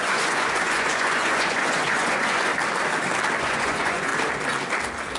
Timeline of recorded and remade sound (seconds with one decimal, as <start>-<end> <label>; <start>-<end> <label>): 0.0-2.5 remade; 2.5-3.4 recorded; 3.4-4.1 remade; 4.1-5.2 recorded